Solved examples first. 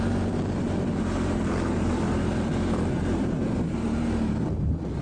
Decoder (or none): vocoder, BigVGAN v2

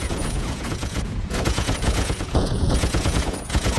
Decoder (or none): vocoder, Vocos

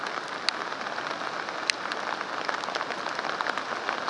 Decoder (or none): none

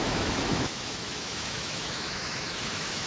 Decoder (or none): autoencoder, DAC-VAE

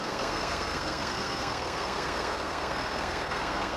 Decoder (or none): codec, SNAC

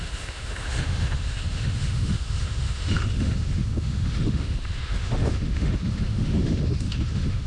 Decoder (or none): autoencoder, DAC-VAE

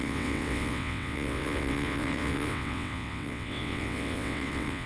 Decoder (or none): vocoder, WaveNeXt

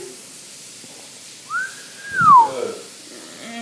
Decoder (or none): none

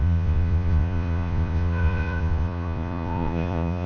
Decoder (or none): vocoder, Vocos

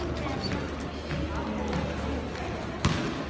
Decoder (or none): none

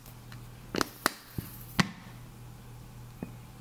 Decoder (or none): none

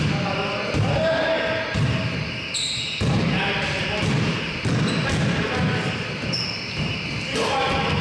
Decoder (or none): none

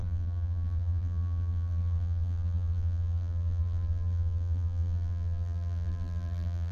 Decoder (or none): vocoder, BigVGAN v2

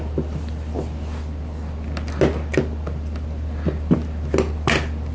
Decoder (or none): none